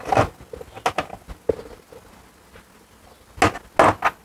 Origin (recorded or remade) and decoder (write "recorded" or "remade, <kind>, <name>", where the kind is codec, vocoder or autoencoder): recorded